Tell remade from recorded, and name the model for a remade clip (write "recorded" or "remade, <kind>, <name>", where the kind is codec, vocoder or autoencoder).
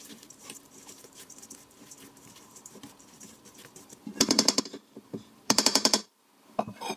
remade, vocoder, BigVGAN v2